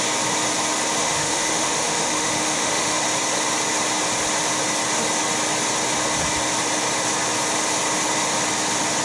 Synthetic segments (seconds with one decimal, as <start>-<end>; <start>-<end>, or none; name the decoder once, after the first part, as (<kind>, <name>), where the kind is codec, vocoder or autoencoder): 1.0-3.0 (autoencoder, DAC-VAE)